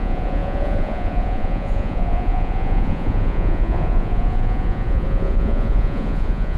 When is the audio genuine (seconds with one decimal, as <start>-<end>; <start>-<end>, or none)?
none